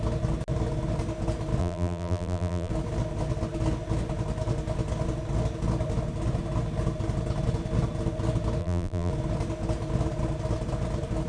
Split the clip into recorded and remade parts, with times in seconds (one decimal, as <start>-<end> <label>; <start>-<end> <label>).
0.0-1.6 recorded; 1.6-2.7 remade; 2.7-8.6 recorded; 8.6-9.1 remade; 9.1-11.3 recorded